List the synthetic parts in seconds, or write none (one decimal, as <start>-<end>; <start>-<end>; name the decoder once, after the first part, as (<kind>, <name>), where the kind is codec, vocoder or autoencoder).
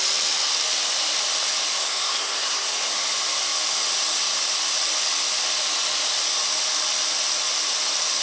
1.8-2.9 (codec, SNAC)